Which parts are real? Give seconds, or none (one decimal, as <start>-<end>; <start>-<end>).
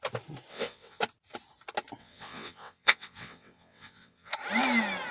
0.0-0.5; 1.0-2.0; 4.3-5.1